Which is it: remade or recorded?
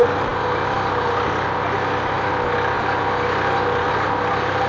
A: recorded